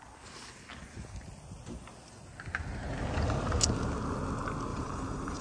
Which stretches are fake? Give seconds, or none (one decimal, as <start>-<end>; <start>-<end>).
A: 4.7-5.4